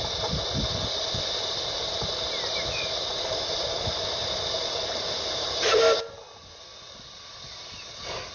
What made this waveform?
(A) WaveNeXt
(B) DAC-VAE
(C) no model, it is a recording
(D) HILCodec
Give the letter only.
C